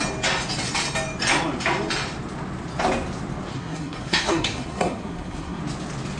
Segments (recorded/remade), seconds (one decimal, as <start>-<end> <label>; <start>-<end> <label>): 0.0-3.5 recorded; 3.5-5.6 remade; 5.6-6.2 recorded